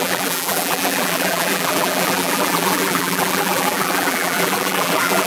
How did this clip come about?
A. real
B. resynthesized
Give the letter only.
B